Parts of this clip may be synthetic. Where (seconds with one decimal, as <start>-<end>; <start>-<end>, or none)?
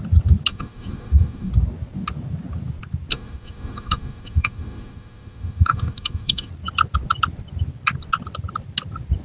0.5-1.5; 3.1-6.5